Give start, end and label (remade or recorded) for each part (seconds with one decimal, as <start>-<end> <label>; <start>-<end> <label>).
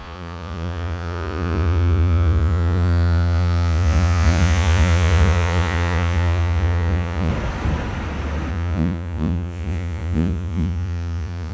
0.0-7.3 remade; 7.3-8.5 recorded; 8.5-11.5 remade